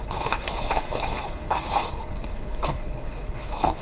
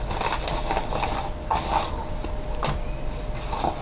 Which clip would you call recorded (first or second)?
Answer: second